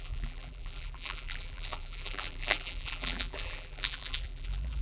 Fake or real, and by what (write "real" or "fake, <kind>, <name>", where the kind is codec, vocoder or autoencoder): fake, vocoder, BigVGAN v2